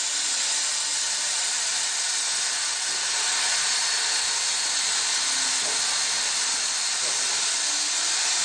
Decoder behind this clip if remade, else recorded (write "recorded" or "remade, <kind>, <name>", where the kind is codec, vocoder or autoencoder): recorded